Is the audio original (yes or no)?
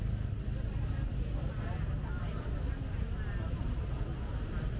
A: yes